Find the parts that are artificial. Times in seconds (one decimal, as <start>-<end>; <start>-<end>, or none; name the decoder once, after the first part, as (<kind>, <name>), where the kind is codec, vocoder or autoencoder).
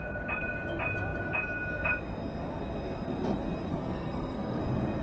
3.7-4.6 (codec, SNAC)